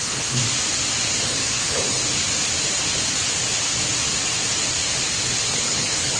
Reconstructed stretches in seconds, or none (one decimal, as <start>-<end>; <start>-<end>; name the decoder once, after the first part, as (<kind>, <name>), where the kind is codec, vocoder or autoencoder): 0.0-0.4 (codec, HILCodec); 1.2-2.0; 5.4-6.2